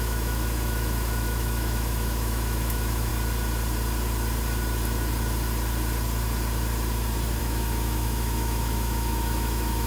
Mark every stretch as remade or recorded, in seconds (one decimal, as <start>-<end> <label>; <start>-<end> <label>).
0.0-3.1 remade; 3.1-7.4 recorded; 7.4-9.9 remade